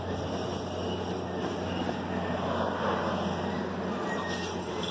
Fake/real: real